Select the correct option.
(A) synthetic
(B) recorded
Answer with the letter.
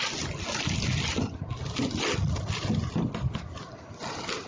B